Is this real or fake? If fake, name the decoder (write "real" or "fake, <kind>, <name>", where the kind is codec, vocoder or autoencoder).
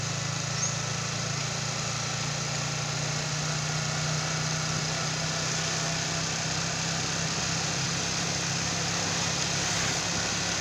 real